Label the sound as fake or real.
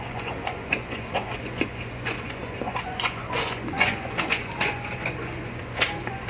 fake